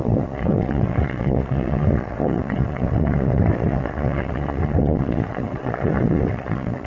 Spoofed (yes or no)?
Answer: yes